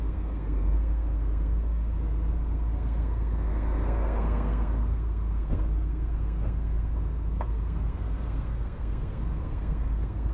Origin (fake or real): fake